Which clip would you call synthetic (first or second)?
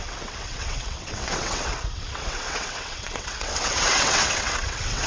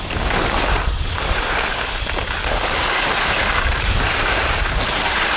first